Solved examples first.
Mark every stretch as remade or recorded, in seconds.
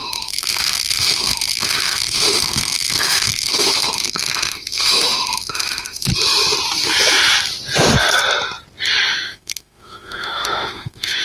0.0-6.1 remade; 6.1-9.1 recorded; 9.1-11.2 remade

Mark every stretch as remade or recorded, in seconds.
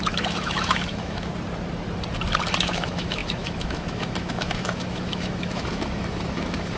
0.0-1.3 remade; 1.3-2.6 recorded; 2.6-6.8 remade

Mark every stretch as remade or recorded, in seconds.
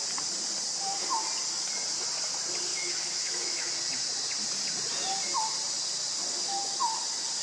0.0-2.7 recorded; 2.7-3.7 remade; 3.7-7.4 recorded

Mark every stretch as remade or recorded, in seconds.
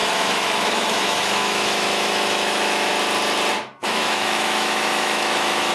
0.0-2.9 remade; 2.9-3.8 recorded; 3.8-5.7 remade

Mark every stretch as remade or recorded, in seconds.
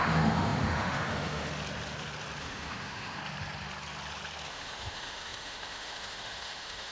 0.0-1.5 remade; 1.5-2.4 recorded; 2.4-3.2 remade; 3.2-4.5 recorded; 4.5-6.9 remade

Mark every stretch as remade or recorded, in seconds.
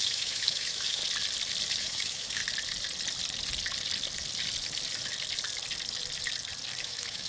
0.0-1.0 remade; 1.0-1.8 recorded; 1.8-2.4 remade; 2.4-6.8 recorded; 6.8-7.3 remade